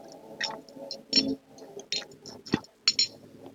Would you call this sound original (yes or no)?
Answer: yes